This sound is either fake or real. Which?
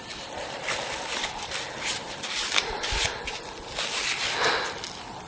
real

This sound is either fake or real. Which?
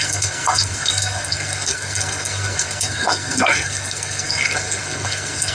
fake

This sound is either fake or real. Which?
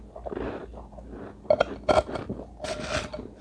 real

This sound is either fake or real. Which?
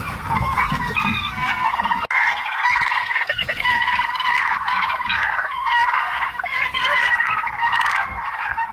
fake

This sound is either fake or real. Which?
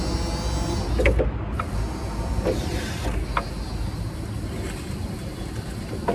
real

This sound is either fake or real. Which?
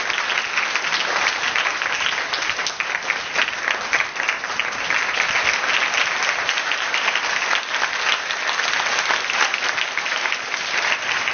real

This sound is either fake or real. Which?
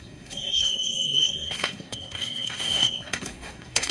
fake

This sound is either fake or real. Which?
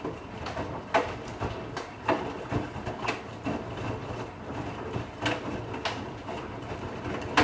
real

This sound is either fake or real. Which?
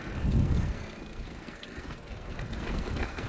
fake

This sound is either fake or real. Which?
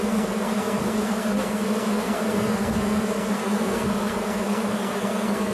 fake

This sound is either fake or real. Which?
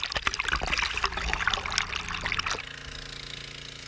real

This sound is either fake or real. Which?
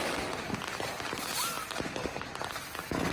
real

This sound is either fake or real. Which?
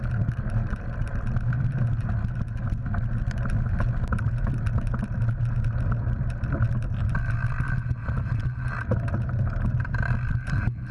real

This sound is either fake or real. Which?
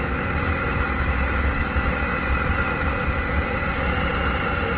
real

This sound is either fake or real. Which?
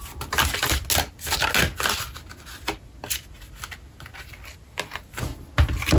real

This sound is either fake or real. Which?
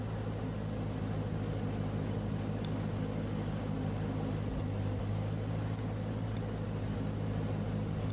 real